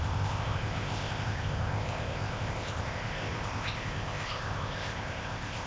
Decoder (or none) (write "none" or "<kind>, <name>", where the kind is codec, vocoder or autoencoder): codec, ZipCodec